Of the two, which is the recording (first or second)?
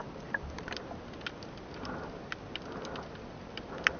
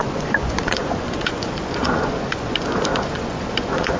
first